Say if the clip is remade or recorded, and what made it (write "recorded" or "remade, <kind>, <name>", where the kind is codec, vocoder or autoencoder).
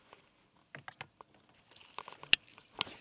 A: recorded